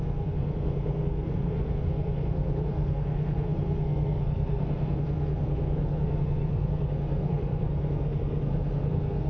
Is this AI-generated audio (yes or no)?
yes